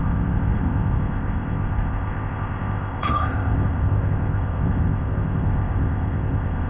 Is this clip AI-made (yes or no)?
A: yes